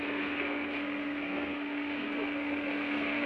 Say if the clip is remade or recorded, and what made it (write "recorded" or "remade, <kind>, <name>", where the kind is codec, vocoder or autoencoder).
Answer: remade, codec, SNAC